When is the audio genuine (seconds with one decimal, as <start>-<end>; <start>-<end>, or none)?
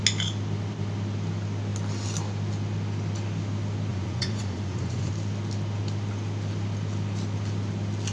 0.0-3.9; 5.1-8.1